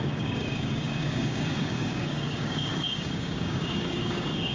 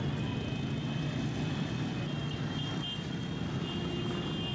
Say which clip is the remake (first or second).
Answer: first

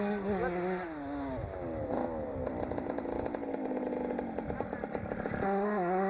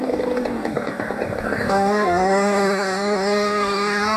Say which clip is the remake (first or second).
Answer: second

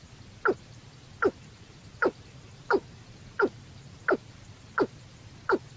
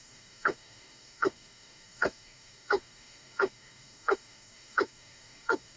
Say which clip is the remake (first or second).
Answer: second